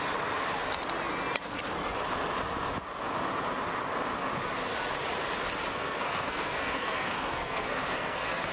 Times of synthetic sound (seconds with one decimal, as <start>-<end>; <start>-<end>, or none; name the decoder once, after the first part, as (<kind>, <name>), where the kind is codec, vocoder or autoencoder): 5.7-8.5 (codec, SNAC)